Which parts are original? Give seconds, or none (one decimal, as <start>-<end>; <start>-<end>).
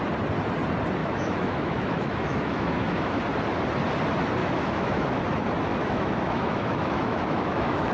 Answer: 0.0-1.0; 3.2-4.4; 5.2-5.7